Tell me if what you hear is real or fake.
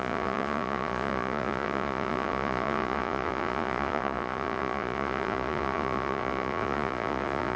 fake